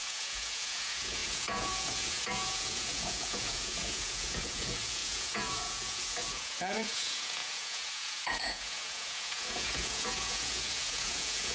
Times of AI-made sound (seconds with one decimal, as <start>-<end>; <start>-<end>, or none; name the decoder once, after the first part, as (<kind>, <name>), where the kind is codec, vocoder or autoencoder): 0.0-11.5 (vocoder, Vocos)

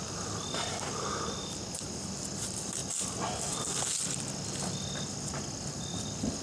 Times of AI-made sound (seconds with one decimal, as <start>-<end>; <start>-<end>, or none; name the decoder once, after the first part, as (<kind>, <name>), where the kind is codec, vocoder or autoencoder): none

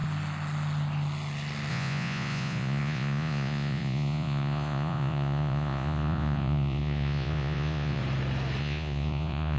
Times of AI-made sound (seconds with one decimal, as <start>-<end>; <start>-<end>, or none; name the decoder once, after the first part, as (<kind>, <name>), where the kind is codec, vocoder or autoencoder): 1.7-8.0 (vocoder, Vocos); 8.6-9.6

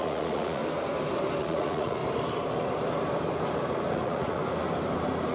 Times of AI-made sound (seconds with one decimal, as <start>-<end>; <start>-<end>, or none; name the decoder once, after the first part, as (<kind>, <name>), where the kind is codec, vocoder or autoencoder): 0.0-0.6 (vocoder, Vocos); 1.4-2.0; 3.9-4.4

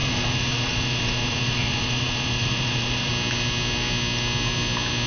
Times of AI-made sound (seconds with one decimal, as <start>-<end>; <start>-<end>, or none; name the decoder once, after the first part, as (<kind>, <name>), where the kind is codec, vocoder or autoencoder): 0.0-3.1 (vocoder, Vocos)

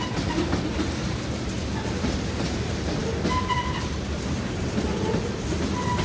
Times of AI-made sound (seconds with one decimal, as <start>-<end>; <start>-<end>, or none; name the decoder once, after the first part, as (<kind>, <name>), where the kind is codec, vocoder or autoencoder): none